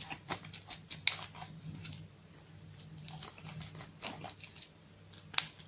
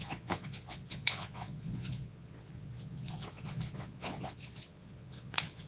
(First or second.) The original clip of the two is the first